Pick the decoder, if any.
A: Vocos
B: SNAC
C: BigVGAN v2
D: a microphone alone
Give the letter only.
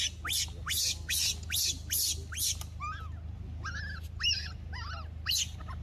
D